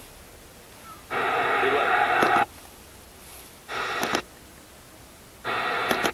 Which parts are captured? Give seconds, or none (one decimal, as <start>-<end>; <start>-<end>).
0.0-6.1